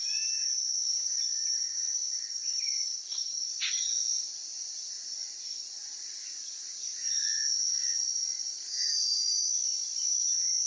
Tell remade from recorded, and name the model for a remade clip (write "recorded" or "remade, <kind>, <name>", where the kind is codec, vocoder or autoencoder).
recorded